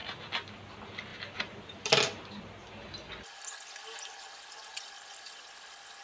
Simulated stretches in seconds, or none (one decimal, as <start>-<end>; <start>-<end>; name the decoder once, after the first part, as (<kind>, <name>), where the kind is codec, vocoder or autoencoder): 1.1-2.4 (vocoder, BigVGAN v2)